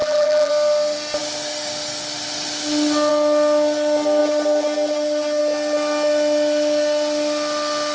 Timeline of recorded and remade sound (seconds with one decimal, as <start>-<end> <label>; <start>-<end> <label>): 0.0-0.5 remade; 0.5-7.9 recorded